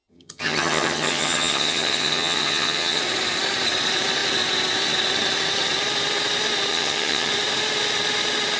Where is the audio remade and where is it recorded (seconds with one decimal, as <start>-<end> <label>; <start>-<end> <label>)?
0.0-3.0 remade; 3.0-6.7 recorded; 6.7-7.3 remade; 7.3-8.6 recorded